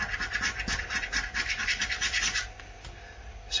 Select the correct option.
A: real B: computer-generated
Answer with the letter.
A